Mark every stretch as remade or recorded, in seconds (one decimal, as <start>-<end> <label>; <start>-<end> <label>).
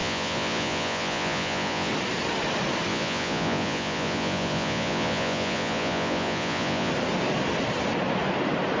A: 0.0-1.9 remade; 1.9-2.9 recorded; 2.9-6.9 remade; 6.9-8.8 recorded